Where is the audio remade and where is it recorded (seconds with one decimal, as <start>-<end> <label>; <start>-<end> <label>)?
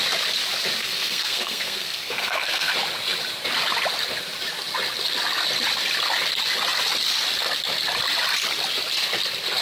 0.0-0.8 recorded; 0.8-2.7 remade; 2.7-9.6 recorded